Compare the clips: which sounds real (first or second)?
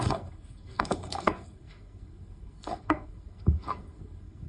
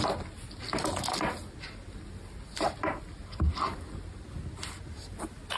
second